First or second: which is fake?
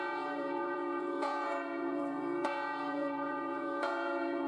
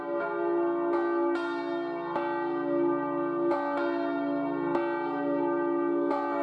first